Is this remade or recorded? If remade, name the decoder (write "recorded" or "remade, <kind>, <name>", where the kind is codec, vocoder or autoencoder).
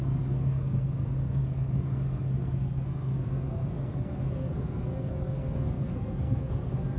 remade, codec, SNAC